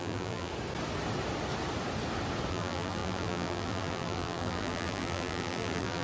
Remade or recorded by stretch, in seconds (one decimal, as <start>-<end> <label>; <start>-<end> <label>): 0.0-0.5 remade; 0.5-2.5 recorded; 2.5-6.0 remade